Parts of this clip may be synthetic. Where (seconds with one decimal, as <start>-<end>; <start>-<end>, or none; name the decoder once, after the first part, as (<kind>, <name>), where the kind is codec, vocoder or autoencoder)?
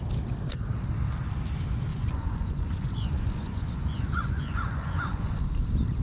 1.9-5.5 (vocoder, Vocos)